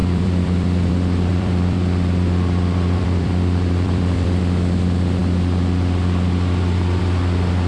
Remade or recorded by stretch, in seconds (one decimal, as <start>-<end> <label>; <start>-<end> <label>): 0.0-0.9 remade; 0.9-1.3 recorded; 1.3-4.4 remade; 4.4-7.7 recorded